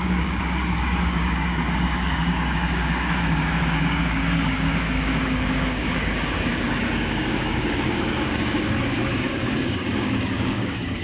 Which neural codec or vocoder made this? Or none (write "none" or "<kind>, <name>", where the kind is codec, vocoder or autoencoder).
codec, DAC